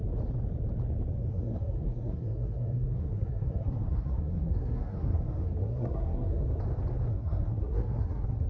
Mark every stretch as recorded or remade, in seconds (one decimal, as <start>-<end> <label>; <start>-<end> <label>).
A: 0.0-1.3 recorded; 1.3-6.4 remade; 6.4-7.1 recorded; 7.1-8.5 remade